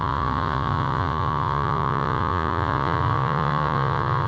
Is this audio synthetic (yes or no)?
yes